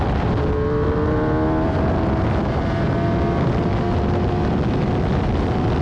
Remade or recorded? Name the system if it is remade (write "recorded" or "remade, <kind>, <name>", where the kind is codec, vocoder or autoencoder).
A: recorded